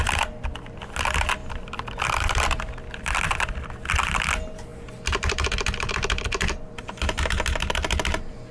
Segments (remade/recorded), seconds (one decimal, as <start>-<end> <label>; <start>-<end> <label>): 0.0-8.5 recorded